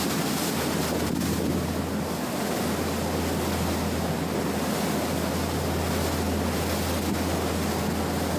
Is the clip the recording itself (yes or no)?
yes